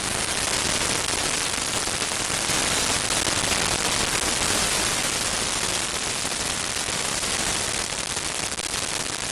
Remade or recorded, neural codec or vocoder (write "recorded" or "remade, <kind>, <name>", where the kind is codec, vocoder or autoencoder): recorded